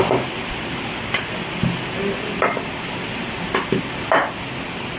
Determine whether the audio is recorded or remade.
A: recorded